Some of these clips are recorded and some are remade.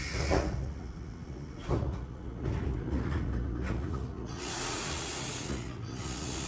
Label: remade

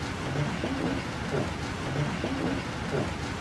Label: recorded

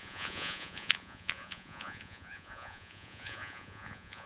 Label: remade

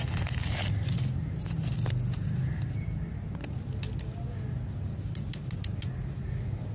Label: recorded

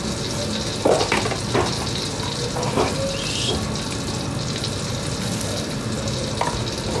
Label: recorded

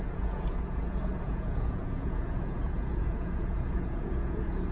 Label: remade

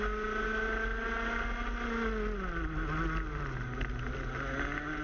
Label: recorded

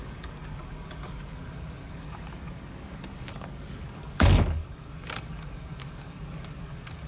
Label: remade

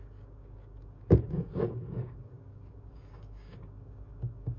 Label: remade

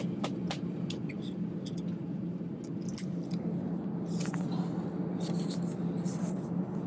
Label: recorded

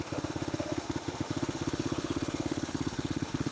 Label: remade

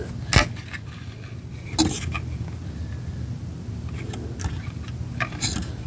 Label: recorded